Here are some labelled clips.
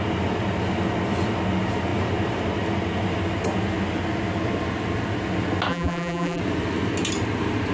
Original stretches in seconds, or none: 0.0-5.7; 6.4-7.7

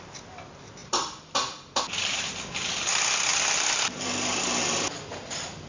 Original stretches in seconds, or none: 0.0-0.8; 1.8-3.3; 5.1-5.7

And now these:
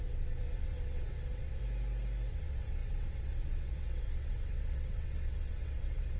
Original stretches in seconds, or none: 1.6-2.3